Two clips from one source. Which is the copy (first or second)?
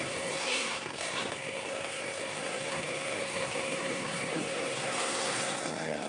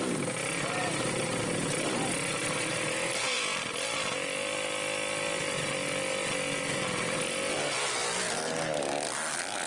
first